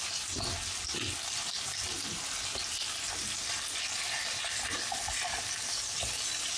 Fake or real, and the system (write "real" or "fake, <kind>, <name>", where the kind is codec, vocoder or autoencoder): real